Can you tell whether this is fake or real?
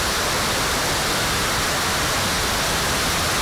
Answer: real